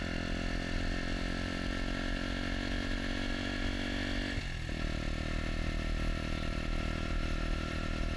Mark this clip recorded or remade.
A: recorded